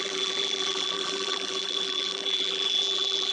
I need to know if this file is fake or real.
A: fake